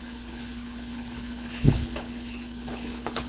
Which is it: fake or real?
fake